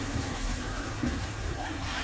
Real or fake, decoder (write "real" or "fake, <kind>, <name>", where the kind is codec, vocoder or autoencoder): fake, codec, SNAC